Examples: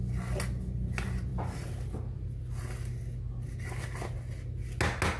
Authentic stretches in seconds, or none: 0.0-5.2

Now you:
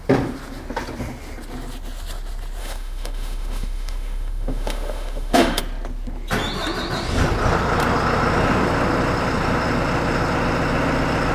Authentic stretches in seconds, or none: 0.0-2.6; 5.6-11.3